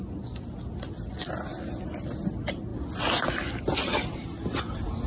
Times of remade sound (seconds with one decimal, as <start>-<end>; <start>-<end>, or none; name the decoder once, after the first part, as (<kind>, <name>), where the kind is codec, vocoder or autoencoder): none